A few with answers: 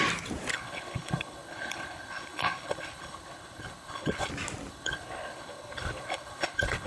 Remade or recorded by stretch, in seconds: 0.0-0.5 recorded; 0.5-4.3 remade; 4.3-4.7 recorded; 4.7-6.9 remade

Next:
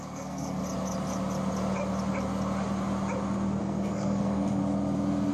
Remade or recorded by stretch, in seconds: 0.0-0.6 remade; 0.6-3.6 recorded; 3.6-4.6 remade; 4.6-5.3 recorded

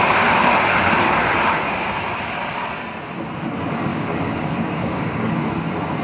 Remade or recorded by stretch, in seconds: 0.0-3.9 recorded; 3.9-5.3 remade; 5.3-6.0 recorded

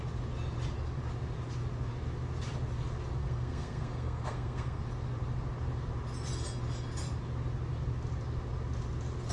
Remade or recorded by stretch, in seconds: 0.0-3.2 recorded; 3.2-4.8 remade; 4.8-9.3 recorded